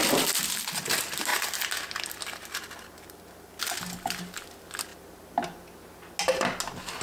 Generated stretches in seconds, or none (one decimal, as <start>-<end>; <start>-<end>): none